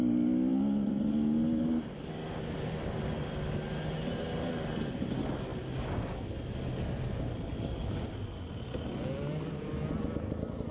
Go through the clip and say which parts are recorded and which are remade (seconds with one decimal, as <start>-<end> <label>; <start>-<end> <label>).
0.0-10.7 recorded